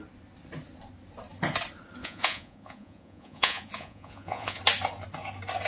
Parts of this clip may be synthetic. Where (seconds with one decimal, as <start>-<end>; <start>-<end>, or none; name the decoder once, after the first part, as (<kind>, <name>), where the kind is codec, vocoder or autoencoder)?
2.0-4.6 (vocoder, Vocos)